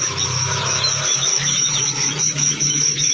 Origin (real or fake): fake